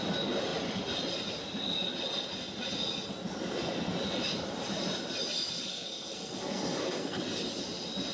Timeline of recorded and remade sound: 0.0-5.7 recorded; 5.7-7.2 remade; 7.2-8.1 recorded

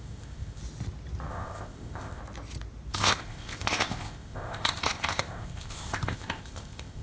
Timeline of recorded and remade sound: 0.0-0.6 remade; 0.6-1.3 recorded; 1.3-2.2 remade; 2.2-2.9 recorded; 2.9-7.0 remade

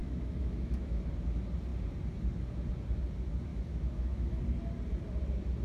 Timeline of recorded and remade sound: 0.0-1.1 remade; 1.1-3.5 recorded; 3.5-4.4 remade; 4.4-5.6 recorded

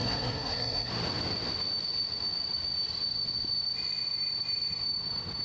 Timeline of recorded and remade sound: 0.0-0.9 remade; 0.9-5.4 recorded